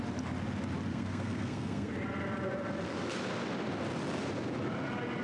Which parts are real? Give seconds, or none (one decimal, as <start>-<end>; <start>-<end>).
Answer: 0.0-0.9; 1.9-5.2